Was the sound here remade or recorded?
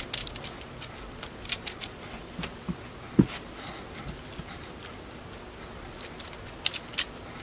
recorded